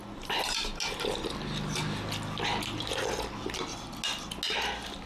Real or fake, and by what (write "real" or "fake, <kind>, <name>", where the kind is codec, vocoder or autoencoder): real